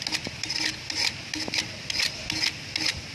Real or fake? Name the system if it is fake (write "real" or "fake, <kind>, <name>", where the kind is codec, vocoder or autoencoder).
real